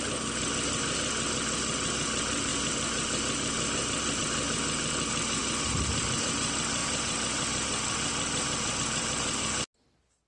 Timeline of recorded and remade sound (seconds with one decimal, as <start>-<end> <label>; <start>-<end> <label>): 0.0-6.8 recorded; 6.8-8.7 remade; 8.7-10.3 recorded